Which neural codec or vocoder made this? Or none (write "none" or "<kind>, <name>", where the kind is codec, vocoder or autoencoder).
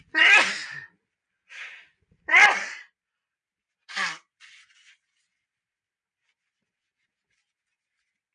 vocoder, BigVGAN v2